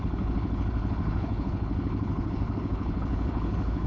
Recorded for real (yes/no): no